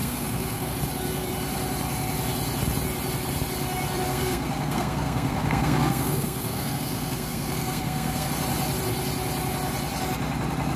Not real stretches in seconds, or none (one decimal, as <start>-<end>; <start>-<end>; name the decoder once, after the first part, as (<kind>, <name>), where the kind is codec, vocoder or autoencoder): 0.0-0.7 (codec, SNAC); 4.1-8.3